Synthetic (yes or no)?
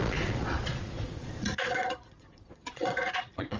yes